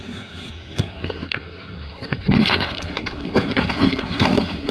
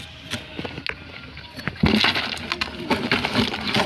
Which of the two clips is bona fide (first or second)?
second